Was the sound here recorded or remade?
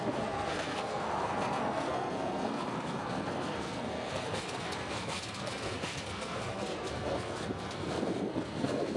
remade